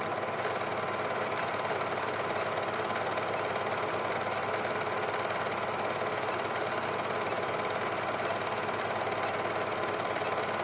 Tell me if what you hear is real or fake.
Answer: real